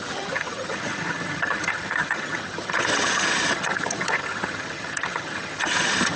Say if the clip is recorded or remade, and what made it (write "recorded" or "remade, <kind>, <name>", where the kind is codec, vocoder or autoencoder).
remade, vocoder, HiFi-GAN